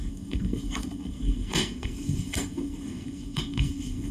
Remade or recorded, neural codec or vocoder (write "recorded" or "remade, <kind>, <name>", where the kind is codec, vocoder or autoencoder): remade, codec, SNAC